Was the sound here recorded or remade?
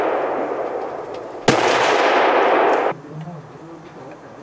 recorded